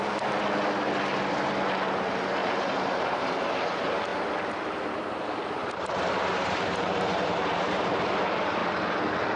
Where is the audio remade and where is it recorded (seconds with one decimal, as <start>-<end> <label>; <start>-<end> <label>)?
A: 0.0-2.4 recorded; 2.4-3.3 remade; 3.3-5.6 recorded; 5.6-8.0 remade; 8.0-9.4 recorded